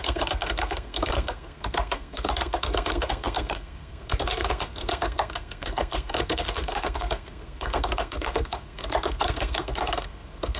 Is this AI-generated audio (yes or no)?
yes